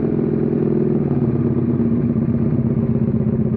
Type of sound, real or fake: fake